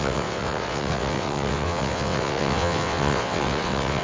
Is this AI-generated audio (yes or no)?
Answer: yes